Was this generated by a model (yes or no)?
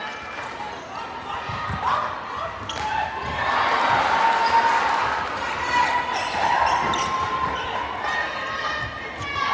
no